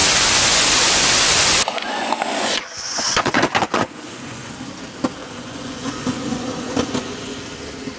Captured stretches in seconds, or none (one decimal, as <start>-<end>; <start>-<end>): 4.5-5.2; 7.4-8.0